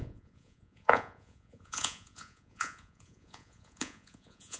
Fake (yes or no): yes